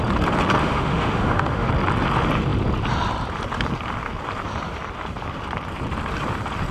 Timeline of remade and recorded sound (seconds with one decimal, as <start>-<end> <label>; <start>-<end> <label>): 0.0-0.6 recorded; 0.6-1.7 remade; 1.7-6.7 recorded